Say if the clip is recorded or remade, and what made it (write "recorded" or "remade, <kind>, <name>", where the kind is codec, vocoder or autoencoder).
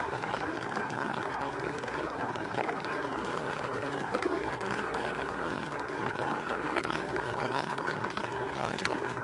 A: remade, codec, SNAC